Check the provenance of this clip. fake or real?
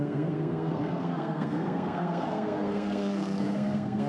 fake